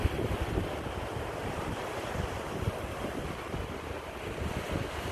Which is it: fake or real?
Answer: real